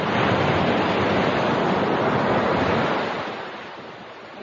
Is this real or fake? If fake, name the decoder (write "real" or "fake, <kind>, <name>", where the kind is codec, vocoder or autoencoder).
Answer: real